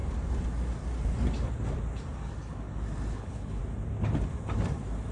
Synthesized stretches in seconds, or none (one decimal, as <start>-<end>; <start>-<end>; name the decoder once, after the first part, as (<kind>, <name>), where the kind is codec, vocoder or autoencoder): 3.1-3.6 (codec, HILCodec)